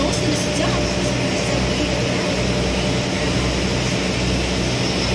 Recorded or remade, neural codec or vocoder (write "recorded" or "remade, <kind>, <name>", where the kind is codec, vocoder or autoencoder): recorded